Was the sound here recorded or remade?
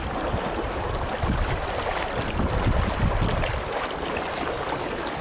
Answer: recorded